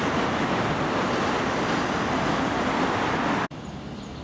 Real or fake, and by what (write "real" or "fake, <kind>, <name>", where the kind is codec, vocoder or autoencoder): real